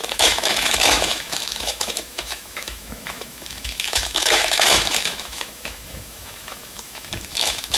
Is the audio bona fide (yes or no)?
no